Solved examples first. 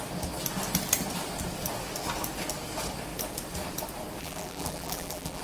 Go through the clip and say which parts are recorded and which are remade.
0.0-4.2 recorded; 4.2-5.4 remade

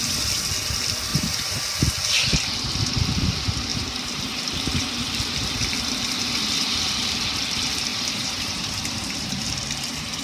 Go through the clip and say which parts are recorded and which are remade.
0.0-1.1 recorded; 1.1-1.6 remade; 1.6-3.7 recorded; 3.7-5.2 remade; 5.2-7.9 recorded; 7.9-10.2 remade

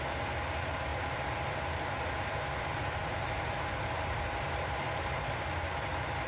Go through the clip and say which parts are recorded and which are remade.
0.0-6.3 recorded

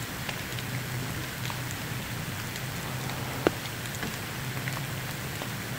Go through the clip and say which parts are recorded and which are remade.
0.0-5.8 recorded

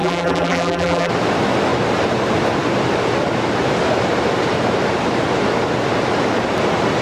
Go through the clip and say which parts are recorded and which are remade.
0.0-1.1 remade; 1.1-7.0 recorded

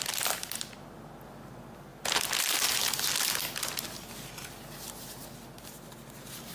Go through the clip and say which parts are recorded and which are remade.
0.0-6.5 recorded

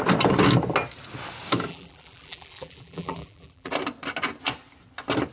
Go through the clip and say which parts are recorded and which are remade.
0.0-1.7 recorded; 1.7-3.7 remade; 3.7-5.3 recorded

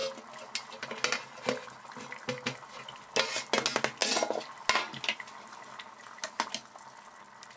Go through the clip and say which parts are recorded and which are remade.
0.0-7.6 recorded